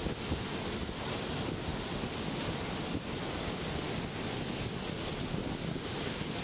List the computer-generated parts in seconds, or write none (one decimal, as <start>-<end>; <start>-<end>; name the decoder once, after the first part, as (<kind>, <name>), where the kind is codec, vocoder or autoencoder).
none